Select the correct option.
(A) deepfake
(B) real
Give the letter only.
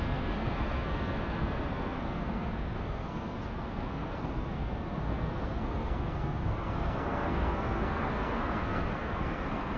A